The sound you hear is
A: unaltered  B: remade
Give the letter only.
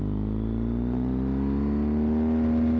A